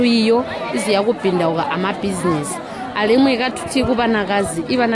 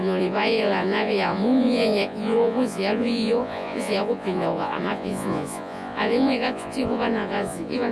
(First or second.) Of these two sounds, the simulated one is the second